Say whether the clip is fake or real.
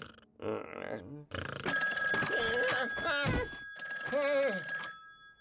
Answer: real